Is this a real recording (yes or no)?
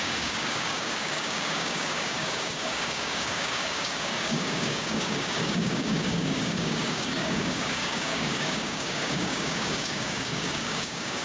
no